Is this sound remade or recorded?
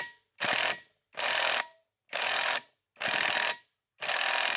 recorded